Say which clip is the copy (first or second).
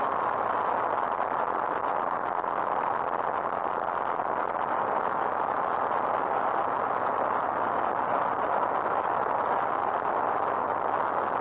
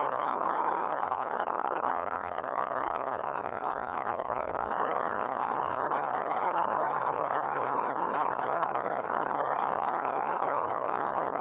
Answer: second